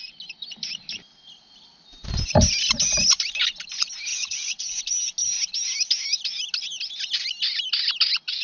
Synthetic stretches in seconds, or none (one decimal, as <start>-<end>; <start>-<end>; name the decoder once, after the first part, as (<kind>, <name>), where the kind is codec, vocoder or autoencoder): 4.1-4.8 (vocoder, WaveNeXt)